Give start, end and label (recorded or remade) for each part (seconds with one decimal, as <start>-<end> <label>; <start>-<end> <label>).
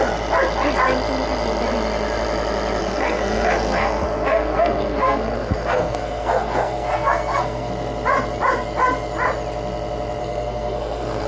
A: 0.0-2.8 recorded; 2.8-7.7 remade; 7.7-10.2 recorded; 10.2-11.3 remade